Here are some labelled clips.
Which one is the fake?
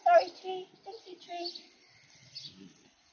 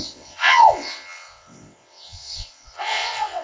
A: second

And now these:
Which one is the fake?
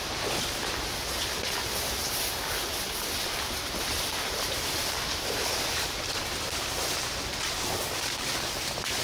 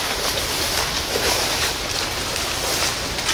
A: first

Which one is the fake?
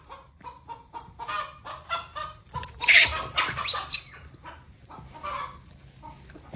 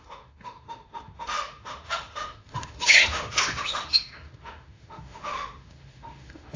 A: second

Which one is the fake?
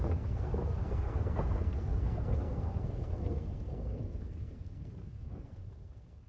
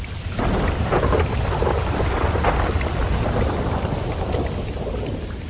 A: first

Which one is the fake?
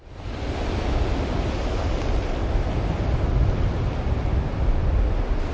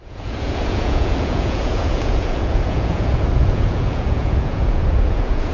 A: second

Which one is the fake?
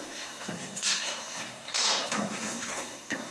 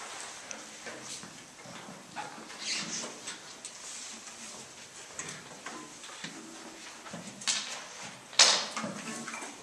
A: first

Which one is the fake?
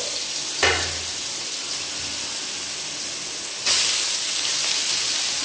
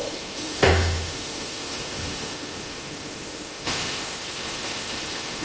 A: second